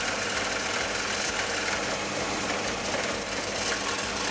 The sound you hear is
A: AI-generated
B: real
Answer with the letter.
B